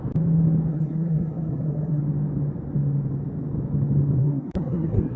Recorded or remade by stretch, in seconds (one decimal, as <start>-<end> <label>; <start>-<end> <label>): 0.0-0.7 recorded; 0.7-2.0 remade; 2.0-4.2 recorded; 4.2-5.2 remade